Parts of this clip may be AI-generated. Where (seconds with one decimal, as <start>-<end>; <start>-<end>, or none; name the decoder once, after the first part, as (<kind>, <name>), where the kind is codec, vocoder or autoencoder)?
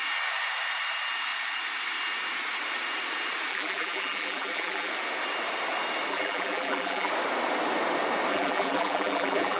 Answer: 3.5-4.9 (vocoder, BigVGAN v2); 6.1-7.1; 8.3-9.6